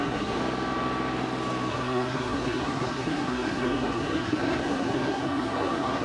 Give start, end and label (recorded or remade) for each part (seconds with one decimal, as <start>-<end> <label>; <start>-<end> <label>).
0.0-0.4 remade; 0.4-1.7 recorded; 1.7-6.0 remade